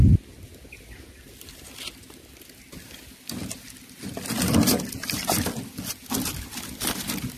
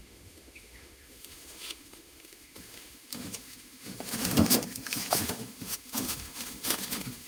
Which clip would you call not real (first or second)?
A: second